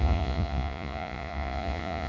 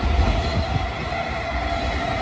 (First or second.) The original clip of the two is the second